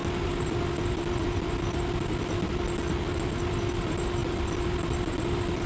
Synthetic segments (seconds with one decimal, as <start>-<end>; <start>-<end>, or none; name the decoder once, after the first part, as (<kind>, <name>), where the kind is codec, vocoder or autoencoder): none